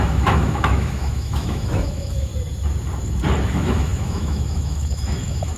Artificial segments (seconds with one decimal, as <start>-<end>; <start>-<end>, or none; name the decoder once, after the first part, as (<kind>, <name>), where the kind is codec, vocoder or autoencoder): 0.0-2.3 (autoencoder, DAC-VAE); 3.5-5.6